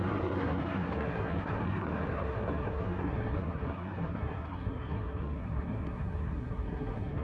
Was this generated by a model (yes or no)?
yes